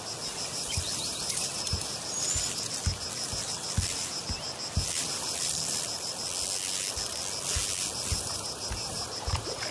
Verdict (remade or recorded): recorded